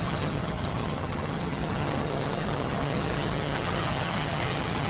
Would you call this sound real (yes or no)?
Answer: no